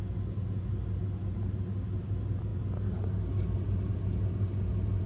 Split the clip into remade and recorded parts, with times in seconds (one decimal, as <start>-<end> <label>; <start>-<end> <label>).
0.0-5.1 recorded